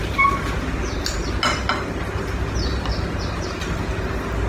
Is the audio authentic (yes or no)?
yes